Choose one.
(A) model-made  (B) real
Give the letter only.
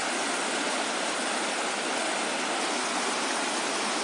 B